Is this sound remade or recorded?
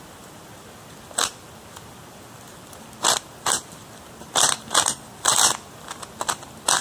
remade